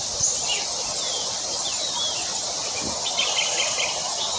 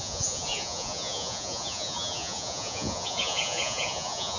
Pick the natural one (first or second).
first